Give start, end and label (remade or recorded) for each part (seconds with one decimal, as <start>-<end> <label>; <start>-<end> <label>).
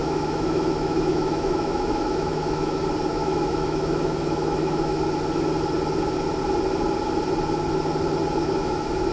0.0-2.8 remade; 2.8-3.2 recorded; 3.2-5.0 remade; 5.0-8.4 recorded; 8.4-9.1 remade